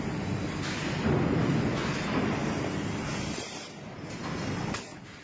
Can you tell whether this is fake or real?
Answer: real